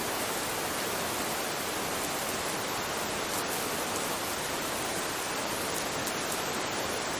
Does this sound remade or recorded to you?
recorded